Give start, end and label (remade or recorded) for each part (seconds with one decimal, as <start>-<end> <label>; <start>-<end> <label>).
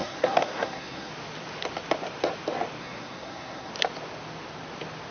0.0-1.1 remade; 1.1-2.8 recorded; 2.8-3.7 remade; 3.7-5.1 recorded